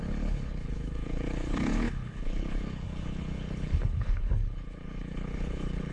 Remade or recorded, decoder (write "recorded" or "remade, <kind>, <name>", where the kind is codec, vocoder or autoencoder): remade, codec, HILCodec